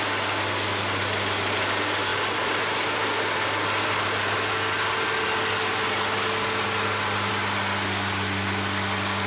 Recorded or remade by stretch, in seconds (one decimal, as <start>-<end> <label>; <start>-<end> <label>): 0.0-9.3 recorded